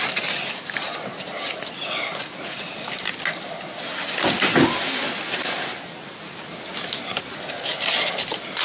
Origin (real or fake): real